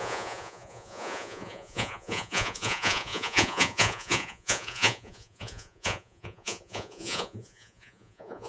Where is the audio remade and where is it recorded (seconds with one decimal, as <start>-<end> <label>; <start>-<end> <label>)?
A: 0.0-8.5 remade